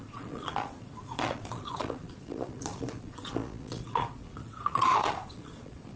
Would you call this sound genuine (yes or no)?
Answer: no